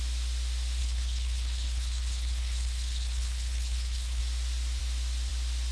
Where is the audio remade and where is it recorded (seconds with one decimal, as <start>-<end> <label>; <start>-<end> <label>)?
0.0-0.8 recorded; 0.8-4.2 remade; 4.2-5.7 recorded